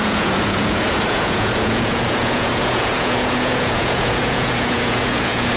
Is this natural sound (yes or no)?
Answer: no